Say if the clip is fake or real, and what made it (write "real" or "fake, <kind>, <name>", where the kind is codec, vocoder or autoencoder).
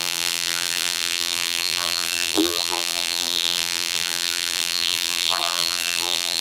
fake, vocoder, BigVGAN v2